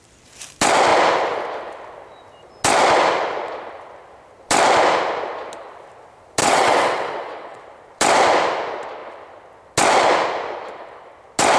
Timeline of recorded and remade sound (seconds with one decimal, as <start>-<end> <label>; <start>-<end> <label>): 0.0-6.4 recorded; 6.4-7.6 remade; 7.6-11.6 recorded